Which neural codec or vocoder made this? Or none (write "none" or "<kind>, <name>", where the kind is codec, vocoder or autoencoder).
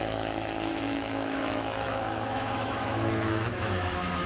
autoencoder, DAC-VAE